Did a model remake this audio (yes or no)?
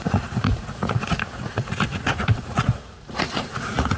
yes